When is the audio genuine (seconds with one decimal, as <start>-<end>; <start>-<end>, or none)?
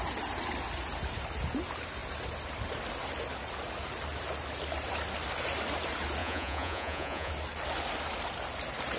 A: 0.0-6.2; 7.3-9.0